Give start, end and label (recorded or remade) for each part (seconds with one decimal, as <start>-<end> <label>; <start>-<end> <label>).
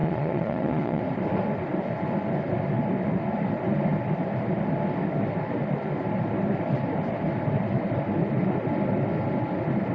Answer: 0.0-1.0 remade; 1.0-9.9 recorded